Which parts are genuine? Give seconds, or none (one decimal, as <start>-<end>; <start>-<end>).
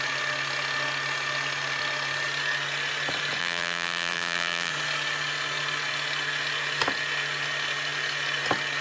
0.0-3.4; 4.7-8.8